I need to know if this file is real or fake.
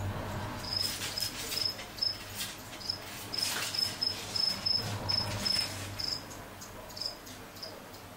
real